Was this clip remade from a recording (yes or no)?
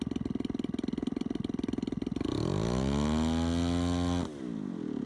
no